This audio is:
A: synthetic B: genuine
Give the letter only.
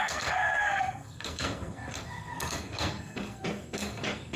A